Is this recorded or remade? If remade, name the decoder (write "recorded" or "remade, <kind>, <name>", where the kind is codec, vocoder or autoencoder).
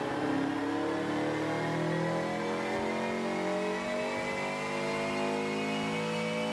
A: recorded